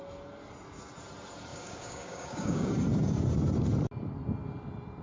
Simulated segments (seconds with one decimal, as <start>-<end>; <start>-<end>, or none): 1.5-2.7